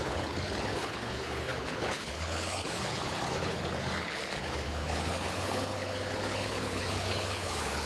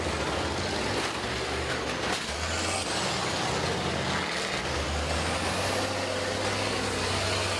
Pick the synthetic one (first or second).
first